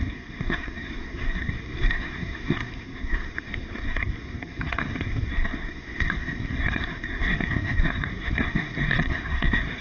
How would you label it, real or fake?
fake